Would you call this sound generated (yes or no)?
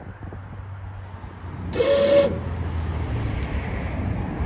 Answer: no